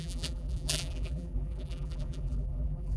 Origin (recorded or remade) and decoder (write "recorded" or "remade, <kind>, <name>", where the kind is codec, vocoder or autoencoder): remade, vocoder, BigVGAN v2